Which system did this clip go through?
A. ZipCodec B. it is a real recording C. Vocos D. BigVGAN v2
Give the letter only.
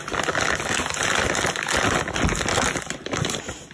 B